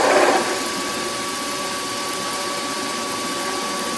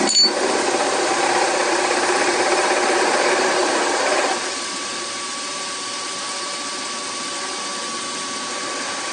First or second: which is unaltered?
first